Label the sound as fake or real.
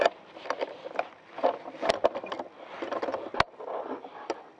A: real